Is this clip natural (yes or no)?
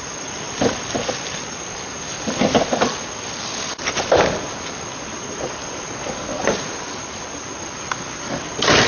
yes